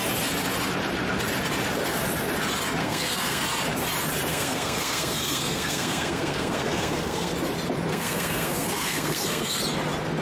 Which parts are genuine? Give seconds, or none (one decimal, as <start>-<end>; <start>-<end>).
0.0-2.8; 3.4-4.3; 7.3-7.9; 9.6-10.2